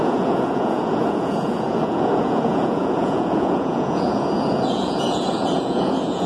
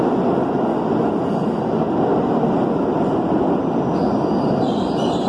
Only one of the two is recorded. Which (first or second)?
second